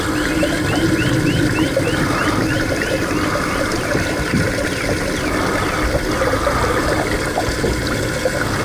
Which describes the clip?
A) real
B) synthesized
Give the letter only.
A